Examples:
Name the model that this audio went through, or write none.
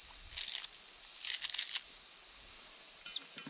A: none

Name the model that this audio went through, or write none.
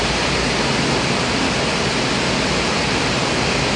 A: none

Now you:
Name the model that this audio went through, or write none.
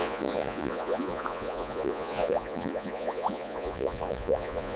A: vocoder, Vocos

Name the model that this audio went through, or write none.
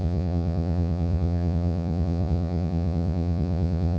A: vocoder, Vocos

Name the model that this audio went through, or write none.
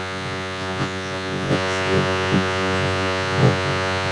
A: vocoder, Vocos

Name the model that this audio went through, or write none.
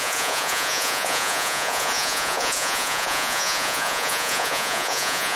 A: vocoder, Vocos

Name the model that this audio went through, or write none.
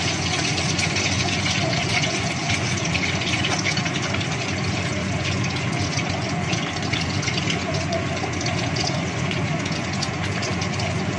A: vocoder, Vocos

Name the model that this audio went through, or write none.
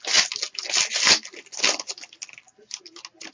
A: none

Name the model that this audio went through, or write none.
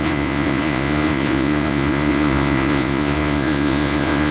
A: vocoder, Vocos